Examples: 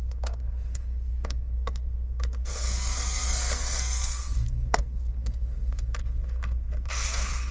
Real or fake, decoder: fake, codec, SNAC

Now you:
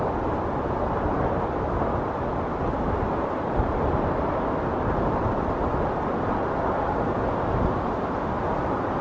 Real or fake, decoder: real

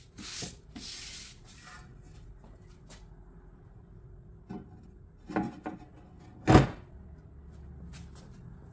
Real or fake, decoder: real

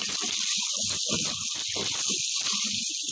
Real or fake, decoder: real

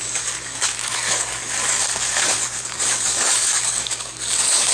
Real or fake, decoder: fake, codec, DAC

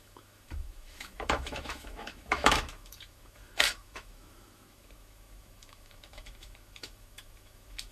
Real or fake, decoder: fake, autoencoder, DAC-VAE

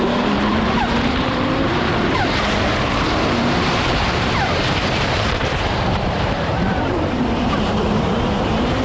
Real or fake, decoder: fake, vocoder, BigVGAN v2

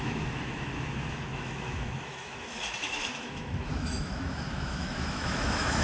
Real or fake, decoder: fake, autoencoder, DAC-VAE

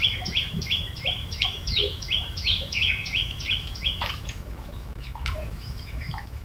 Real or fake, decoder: fake, autoencoder, DAC-VAE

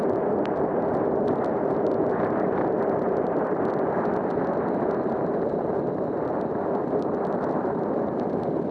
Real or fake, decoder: real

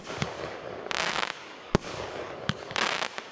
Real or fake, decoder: fake, codec, DAC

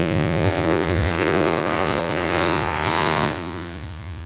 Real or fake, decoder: fake, vocoder, Vocos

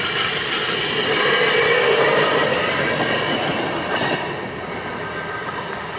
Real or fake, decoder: real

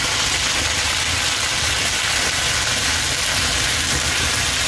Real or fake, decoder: real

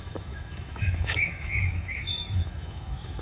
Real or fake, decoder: fake, autoencoder, DAC-VAE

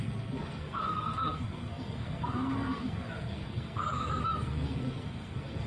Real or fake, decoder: fake, codec, SNAC